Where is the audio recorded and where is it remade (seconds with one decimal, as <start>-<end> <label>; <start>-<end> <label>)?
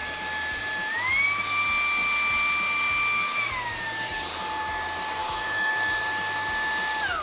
0.0-5.2 recorded; 5.2-5.7 remade; 5.7-7.2 recorded